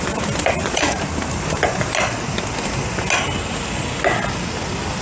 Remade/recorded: recorded